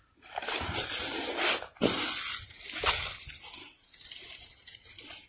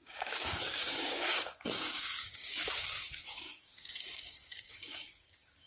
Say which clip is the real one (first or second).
first